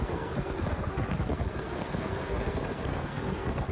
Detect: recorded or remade remade